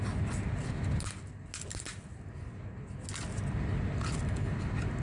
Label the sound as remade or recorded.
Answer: recorded